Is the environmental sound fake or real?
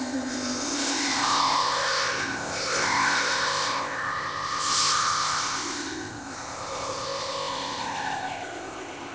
fake